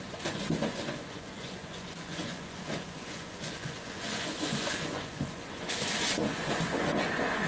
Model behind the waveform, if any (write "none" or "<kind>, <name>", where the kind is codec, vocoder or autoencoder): vocoder, Vocos